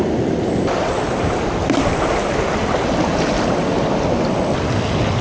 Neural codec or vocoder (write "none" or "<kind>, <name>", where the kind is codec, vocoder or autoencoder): none